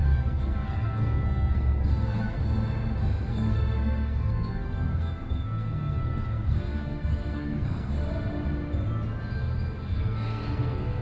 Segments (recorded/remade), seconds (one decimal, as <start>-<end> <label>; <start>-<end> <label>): 0.0-2.4 remade; 2.4-3.3 recorded; 3.3-7.9 remade; 7.9-9.9 recorded; 9.9-11.0 remade